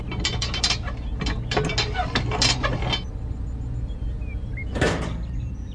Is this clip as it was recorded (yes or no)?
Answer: yes